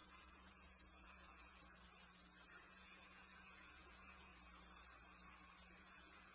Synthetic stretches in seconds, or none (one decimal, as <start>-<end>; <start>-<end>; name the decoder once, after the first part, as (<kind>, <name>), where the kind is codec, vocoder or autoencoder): 0.0-1.6 (vocoder, Vocos); 2.6-4.3; 5.8-6.3